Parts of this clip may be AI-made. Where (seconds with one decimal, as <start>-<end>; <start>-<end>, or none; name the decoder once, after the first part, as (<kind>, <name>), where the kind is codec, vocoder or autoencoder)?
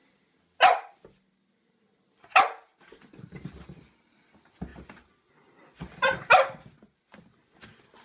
none